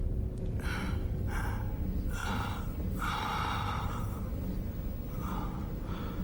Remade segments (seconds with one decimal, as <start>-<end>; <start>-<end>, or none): none